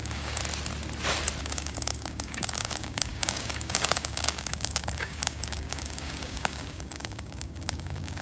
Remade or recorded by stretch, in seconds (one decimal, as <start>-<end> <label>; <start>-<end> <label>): 0.0-0.4 remade; 0.4-1.4 recorded; 1.4-8.2 remade